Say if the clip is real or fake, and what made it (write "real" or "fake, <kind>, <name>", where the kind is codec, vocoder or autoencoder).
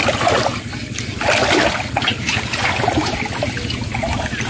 real